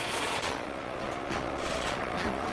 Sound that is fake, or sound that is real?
fake